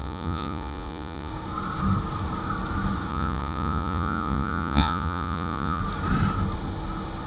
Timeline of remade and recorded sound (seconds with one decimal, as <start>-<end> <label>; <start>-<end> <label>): 0.0-1.3 remade; 1.3-3.1 recorded; 3.1-5.8 remade; 5.8-7.3 recorded